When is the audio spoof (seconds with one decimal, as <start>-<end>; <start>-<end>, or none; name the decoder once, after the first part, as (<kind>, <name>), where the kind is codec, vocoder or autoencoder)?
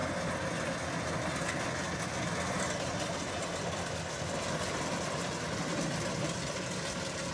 none